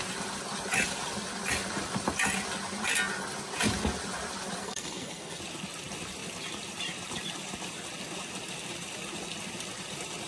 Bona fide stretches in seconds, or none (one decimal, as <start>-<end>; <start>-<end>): 0.0-4.6; 5.4-10.3